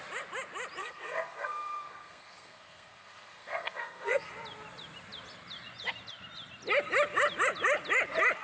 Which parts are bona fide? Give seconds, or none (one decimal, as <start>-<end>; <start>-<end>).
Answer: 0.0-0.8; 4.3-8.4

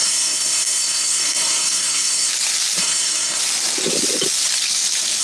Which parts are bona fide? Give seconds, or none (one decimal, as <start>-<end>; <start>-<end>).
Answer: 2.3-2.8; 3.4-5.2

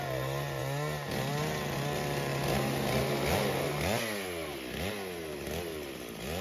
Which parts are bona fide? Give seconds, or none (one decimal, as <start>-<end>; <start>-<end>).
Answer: 0.0-6.4